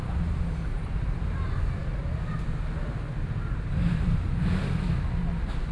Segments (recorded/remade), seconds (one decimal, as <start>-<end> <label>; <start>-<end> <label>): 0.0-5.7 recorded